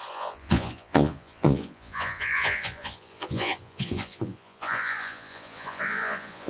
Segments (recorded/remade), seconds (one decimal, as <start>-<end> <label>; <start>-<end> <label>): 0.0-6.5 remade